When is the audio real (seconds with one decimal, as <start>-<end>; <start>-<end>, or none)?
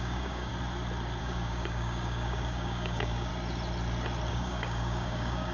0.5-1.2; 3.3-4.3